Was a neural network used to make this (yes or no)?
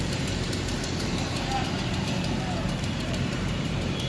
yes